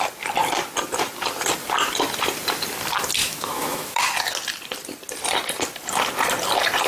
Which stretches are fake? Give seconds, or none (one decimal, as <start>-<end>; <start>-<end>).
3.2-4.0

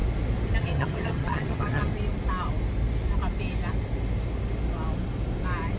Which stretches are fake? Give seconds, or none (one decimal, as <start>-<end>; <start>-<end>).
0.6-1.9

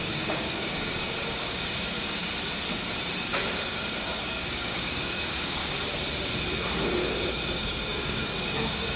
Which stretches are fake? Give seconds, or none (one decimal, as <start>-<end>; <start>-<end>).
0.0-2.2; 3.7-5.6; 7.3-9.0

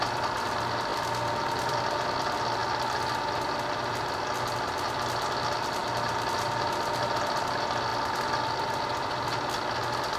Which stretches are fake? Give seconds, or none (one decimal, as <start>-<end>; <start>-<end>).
none

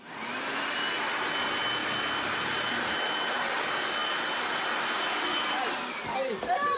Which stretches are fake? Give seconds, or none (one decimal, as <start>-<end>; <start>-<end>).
none

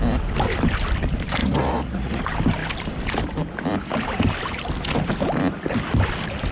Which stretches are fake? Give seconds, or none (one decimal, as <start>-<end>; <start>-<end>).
1.4-2.2

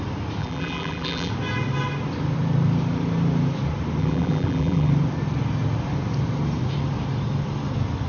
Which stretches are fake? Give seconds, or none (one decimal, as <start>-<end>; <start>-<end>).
0.4-1.3; 4.0-4.9